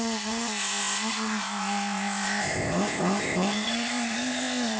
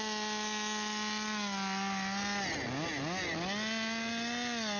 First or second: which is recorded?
second